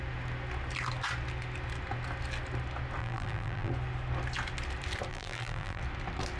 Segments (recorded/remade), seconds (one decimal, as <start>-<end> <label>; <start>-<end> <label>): 0.0-3.0 recorded; 3.0-3.7 remade; 3.7-5.1 recorded; 5.1-5.8 remade; 5.8-6.4 recorded

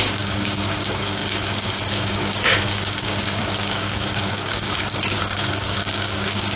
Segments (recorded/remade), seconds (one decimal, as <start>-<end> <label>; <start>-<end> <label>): 0.0-6.6 remade

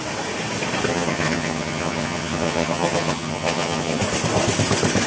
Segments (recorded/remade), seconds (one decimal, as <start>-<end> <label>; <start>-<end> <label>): 0.0-0.9 recorded; 0.9-4.0 remade; 4.0-5.1 recorded